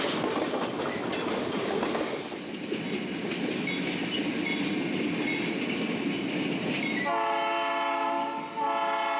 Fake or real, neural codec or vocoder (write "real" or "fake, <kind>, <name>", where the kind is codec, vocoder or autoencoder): real